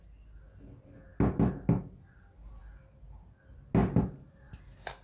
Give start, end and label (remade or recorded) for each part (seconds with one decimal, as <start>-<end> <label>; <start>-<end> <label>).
0.0-5.0 recorded